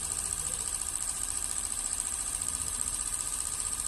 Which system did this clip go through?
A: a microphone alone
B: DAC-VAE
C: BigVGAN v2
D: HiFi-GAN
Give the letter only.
C